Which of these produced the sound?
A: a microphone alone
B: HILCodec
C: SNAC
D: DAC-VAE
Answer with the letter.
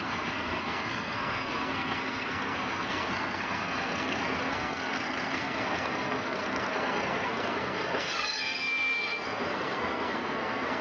C